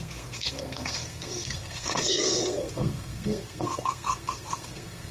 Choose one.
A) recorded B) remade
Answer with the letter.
B